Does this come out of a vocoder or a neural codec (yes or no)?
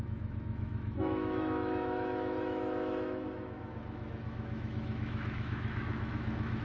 yes